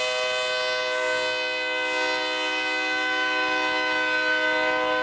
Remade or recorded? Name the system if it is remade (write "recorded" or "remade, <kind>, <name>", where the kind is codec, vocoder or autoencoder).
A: recorded